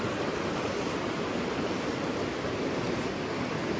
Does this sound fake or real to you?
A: real